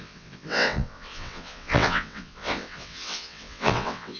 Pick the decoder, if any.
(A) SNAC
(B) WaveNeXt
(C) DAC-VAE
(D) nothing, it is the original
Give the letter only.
B